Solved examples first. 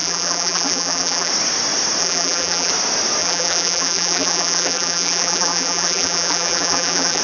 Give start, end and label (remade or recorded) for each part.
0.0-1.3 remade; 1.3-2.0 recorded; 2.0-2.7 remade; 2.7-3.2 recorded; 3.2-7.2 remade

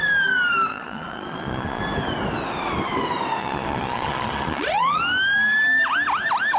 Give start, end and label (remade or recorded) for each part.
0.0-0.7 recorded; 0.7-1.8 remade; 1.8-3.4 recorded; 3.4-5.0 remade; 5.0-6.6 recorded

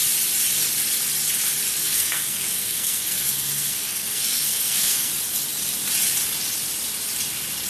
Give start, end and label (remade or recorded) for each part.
0.0-1.8 recorded; 1.8-5.1 remade; 5.1-7.7 recorded